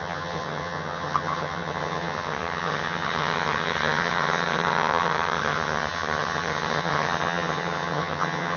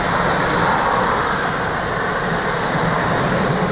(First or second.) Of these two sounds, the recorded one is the second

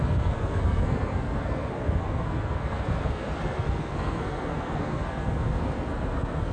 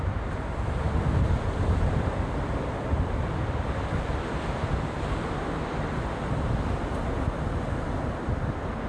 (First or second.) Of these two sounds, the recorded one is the second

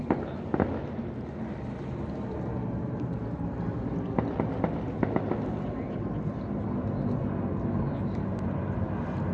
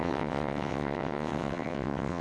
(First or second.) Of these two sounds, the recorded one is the first